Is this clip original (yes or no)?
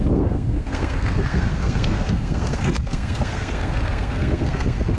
no